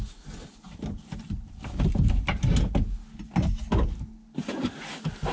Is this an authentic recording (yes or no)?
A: yes